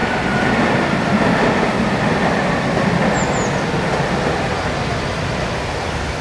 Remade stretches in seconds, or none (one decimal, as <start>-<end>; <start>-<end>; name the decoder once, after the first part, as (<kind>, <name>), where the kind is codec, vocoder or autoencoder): none